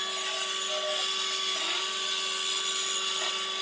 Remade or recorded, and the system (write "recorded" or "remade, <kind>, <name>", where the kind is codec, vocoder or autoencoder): recorded